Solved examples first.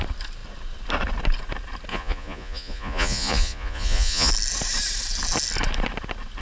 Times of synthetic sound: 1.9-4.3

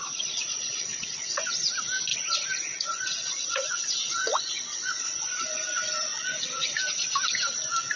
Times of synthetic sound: 0.0-1.5; 2.1-5.4; 6.1-6.7

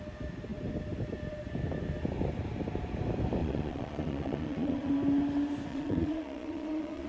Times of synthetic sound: 3.4-4.9; 5.7-7.1

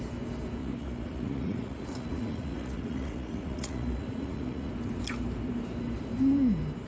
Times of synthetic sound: 0.6-4.7